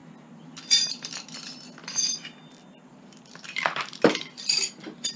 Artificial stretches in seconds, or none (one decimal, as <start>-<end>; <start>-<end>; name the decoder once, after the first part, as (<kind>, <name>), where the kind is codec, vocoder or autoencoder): 1.8-5.2 (vocoder, BigVGAN v2)